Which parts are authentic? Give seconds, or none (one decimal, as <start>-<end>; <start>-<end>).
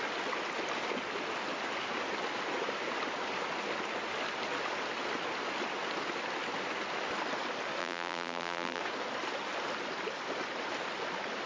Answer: 0.0-7.8; 8.8-11.5